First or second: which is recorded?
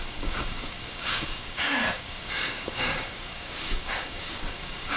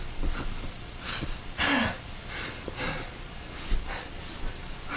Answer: second